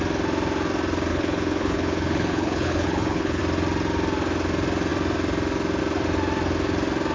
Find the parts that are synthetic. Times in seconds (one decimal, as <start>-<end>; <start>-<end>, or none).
1.1-3.4